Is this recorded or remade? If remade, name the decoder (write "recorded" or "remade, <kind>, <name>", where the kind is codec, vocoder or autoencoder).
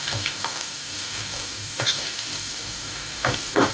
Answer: remade, codec, DAC